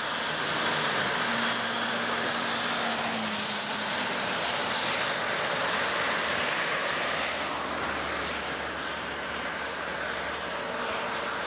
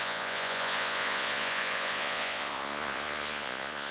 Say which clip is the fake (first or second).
second